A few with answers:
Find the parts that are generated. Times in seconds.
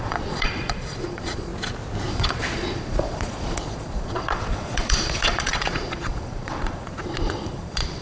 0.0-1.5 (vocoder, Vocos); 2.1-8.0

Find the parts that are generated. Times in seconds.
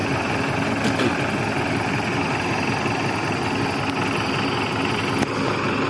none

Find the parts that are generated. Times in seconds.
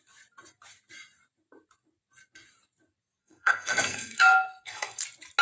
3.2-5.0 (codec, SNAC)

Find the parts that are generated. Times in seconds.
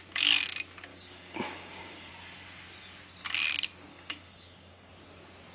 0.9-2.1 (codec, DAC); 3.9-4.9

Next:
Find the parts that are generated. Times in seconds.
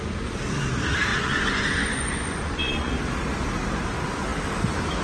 1.1-2.9 (vocoder, Vocos)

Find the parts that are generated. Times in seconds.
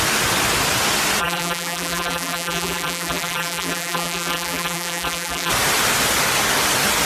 1.2-5.5 (vocoder, BigVGAN v2)